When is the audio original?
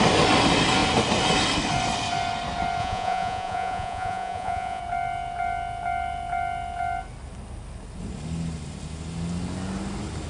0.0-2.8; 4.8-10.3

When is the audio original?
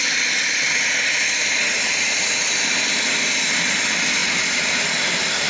0.0-5.5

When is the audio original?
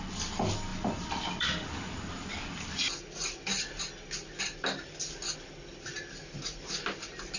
0.0-0.7; 3.8-7.4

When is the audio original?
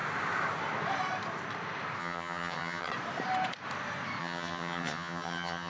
0.0-2.0; 2.9-4.2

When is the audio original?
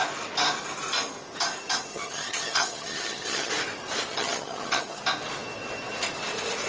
0.0-1.9; 3.5-4.1; 5.0-6.7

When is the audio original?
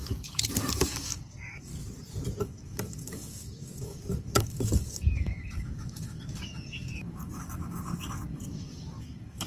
1.7-2.4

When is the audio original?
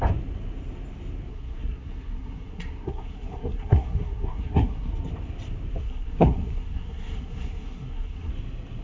0.0-1.3; 4.9-5.8; 8.3-8.8